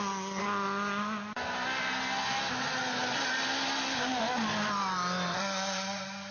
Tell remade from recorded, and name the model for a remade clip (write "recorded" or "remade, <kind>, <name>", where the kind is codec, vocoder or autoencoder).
recorded